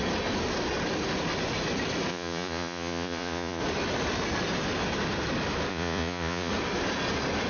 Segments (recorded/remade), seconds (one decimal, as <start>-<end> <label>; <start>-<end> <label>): 0.0-2.1 recorded; 2.1-3.6 remade; 3.6-5.7 recorded; 5.7-6.5 remade; 6.5-7.5 recorded

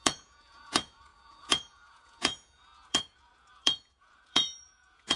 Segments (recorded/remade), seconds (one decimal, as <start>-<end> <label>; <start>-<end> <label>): 0.0-5.2 remade

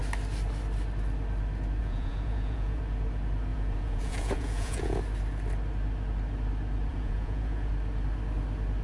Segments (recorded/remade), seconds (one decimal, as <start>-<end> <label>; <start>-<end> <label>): 0.0-1.8 recorded; 1.8-2.8 remade; 2.8-3.5 recorded; 3.5-5.0 remade; 5.0-6.9 recorded; 6.9-7.7 remade; 7.7-8.8 recorded

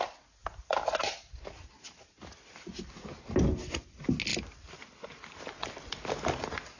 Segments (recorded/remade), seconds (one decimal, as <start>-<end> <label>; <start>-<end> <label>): 0.0-6.8 recorded

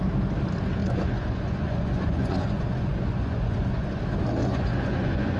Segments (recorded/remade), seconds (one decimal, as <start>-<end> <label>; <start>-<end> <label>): 0.0-0.8 recorded; 0.8-4.0 remade; 4.0-4.4 recorded; 4.4-5.4 remade

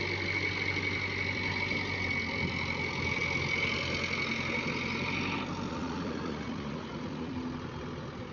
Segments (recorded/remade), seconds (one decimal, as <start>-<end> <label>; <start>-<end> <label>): 0.0-5.7 recorded; 5.7-7.3 remade; 7.3-8.3 recorded